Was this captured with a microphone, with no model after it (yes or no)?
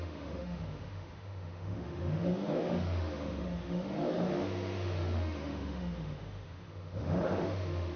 no